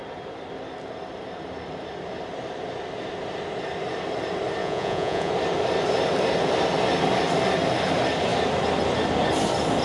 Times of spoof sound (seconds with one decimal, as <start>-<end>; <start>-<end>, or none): 4.6-5.3